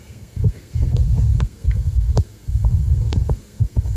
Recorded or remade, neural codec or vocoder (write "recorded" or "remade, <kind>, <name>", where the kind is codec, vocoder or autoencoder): remade, codec, SNAC